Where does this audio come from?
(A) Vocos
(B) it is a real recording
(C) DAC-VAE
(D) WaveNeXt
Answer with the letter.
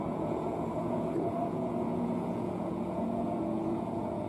A